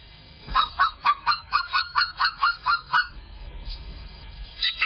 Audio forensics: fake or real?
fake